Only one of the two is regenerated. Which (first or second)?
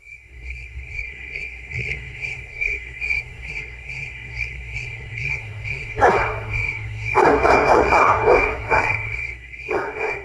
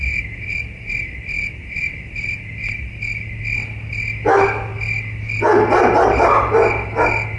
first